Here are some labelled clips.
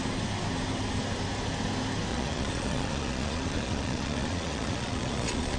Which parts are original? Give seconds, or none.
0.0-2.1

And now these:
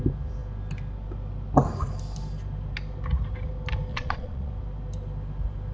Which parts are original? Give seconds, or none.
0.0-3.9; 4.5-5.7

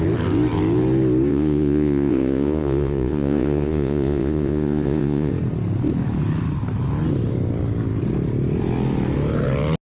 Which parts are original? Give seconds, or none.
0.0-1.3; 5.3-9.9

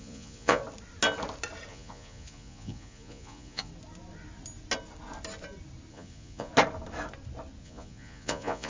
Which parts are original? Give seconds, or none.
0.6-1.7; 3.7-5.9; 6.5-7.6